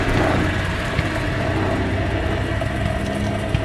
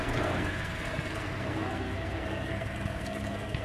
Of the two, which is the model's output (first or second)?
second